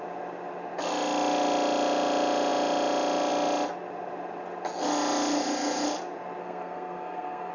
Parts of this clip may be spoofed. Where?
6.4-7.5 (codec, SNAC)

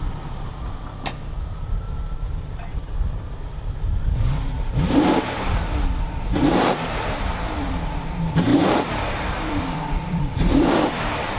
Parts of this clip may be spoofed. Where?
0.0-11.4 (vocoder, BigVGAN v2)